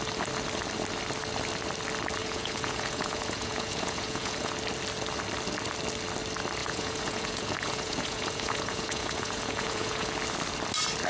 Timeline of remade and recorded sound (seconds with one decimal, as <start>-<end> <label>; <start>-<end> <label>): 0.0-2.2 recorded; 2.2-4.5 remade; 4.5-6.6 recorded; 6.6-10.1 remade; 10.1-11.1 recorded